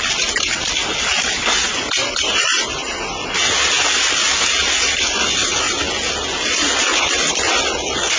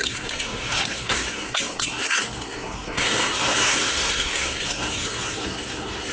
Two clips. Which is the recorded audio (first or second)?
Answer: first